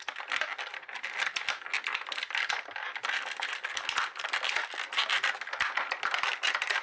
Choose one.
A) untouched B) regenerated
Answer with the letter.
A